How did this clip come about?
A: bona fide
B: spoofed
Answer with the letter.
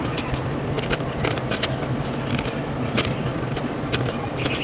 A